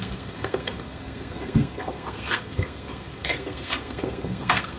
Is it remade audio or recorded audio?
remade